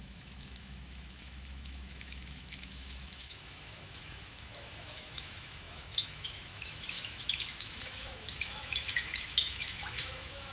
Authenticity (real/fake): fake